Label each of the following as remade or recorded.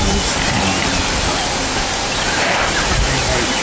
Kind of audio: recorded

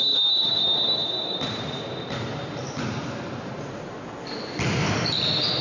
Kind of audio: recorded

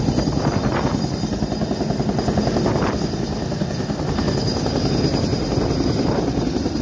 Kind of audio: recorded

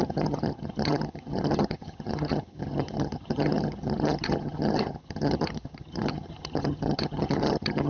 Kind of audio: remade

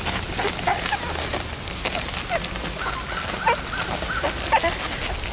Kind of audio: recorded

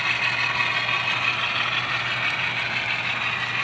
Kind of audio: recorded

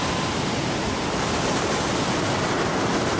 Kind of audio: recorded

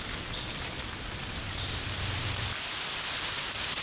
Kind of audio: recorded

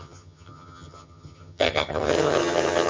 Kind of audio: remade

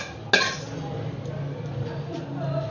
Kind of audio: recorded